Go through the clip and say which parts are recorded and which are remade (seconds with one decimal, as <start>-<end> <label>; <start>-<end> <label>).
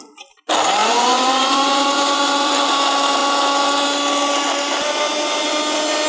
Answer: 0.0-0.8 recorded; 0.8-2.7 remade; 2.7-6.1 recorded